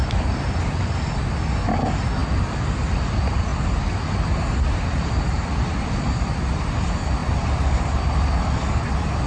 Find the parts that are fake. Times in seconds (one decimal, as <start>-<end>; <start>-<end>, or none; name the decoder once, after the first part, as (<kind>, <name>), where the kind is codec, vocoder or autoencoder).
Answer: none